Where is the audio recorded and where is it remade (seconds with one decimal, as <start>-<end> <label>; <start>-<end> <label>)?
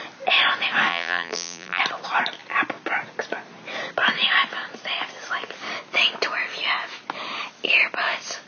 0.0-0.9 recorded; 0.9-1.8 remade; 1.8-8.5 recorded